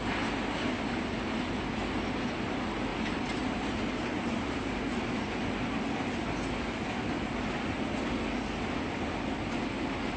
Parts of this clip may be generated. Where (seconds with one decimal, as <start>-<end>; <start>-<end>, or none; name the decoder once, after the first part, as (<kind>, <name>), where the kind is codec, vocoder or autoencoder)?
2.9-5.2 (vocoder, BigVGAN v2)